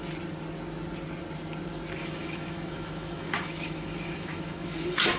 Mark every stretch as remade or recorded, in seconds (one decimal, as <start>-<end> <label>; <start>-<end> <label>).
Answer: 0.0-2.0 recorded; 2.0-5.2 remade

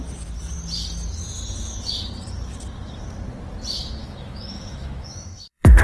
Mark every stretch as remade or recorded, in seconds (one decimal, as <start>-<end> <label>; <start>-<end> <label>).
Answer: 0.0-4.0 recorded; 4.0-5.8 remade

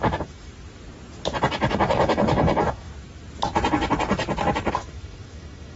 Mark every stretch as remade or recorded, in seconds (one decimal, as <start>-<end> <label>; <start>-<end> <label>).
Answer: 0.0-0.5 remade; 0.5-1.5 recorded; 1.5-2.9 remade; 2.9-4.7 recorded; 4.7-5.8 remade

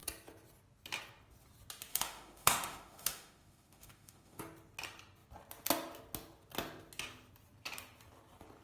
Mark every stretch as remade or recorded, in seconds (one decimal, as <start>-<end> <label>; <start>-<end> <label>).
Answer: 0.0-1.9 recorded; 1.9-4.4 remade; 4.4-8.6 recorded

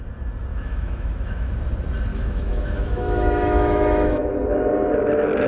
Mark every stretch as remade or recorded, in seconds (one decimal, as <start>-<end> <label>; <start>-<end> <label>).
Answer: 0.0-0.5 recorded; 0.5-1.5 remade; 1.5-2.1 recorded; 2.1-4.4 remade; 4.4-5.5 recorded

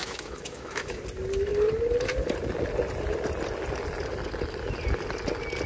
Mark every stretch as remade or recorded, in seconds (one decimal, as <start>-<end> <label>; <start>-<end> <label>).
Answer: 0.0-1.0 remade; 1.0-5.7 recorded

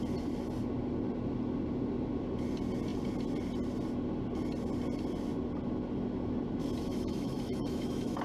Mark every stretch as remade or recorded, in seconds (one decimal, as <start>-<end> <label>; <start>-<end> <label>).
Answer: 0.0-6.9 recorded; 6.9-8.2 remade